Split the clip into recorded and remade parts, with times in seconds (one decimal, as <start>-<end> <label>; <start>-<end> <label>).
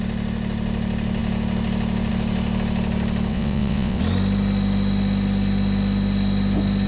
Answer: 0.0-3.3 recorded; 3.3-4.0 remade; 4.0-6.9 recorded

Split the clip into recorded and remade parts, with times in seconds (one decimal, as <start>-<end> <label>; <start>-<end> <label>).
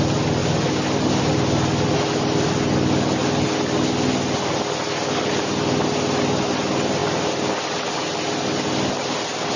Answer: 0.0-9.6 recorded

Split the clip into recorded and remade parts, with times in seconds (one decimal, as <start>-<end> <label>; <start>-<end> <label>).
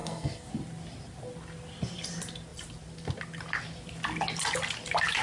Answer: 0.0-0.5 remade; 0.5-5.2 recorded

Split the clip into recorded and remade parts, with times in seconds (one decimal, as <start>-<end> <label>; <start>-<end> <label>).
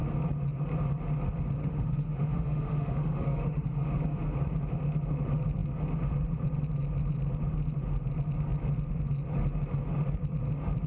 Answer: 0.0-1.6 recorded; 1.6-4.0 remade; 4.0-10.9 recorded